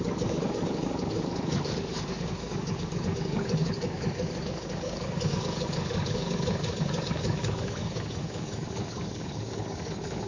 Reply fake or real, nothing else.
fake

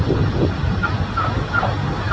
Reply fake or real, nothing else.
real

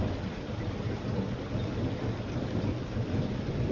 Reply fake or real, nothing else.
real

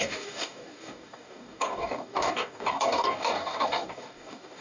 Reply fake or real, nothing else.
fake